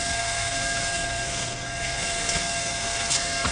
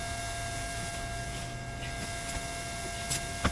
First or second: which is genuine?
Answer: second